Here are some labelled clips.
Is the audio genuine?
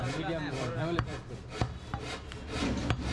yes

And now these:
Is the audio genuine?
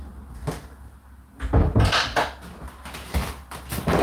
yes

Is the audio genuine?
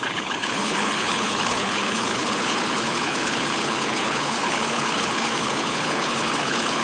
no